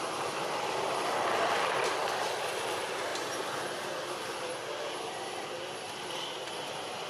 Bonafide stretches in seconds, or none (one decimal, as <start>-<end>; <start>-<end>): 0.0-7.1